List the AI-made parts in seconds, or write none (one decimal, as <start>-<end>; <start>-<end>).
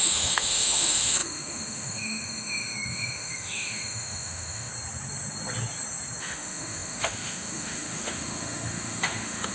0.0-4.7; 6.2-9.5